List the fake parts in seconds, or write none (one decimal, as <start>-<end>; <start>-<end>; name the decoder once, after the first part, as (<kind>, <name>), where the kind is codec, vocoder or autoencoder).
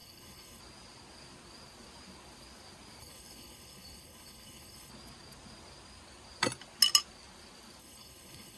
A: 0.0-0.6 (codec, HILCodec); 3.0-4.9; 7.8-8.6